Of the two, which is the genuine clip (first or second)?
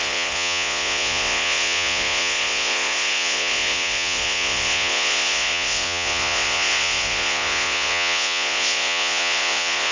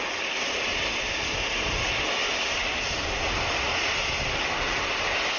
second